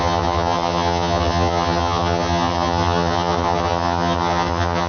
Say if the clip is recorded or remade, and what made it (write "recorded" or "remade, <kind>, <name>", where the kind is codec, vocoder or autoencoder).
remade, vocoder, HiFi-GAN